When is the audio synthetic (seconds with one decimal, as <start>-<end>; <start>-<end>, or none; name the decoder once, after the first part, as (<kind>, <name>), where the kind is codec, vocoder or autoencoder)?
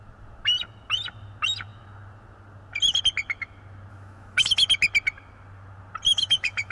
3.9-4.7 (autoencoder, DAC-VAE); 6.1-6.7